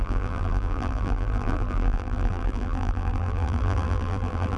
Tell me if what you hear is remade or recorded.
remade